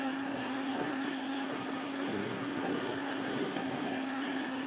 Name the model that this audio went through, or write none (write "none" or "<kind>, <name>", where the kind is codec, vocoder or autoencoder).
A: codec, SNAC